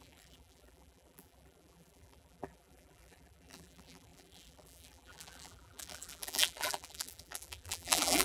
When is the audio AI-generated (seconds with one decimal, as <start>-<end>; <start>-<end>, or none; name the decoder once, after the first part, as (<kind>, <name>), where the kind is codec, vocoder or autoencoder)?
0.0-8.2 (vocoder, BigVGAN v2)